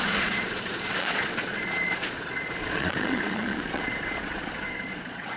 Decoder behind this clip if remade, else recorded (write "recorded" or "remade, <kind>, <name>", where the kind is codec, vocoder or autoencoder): remade, vocoder, Vocos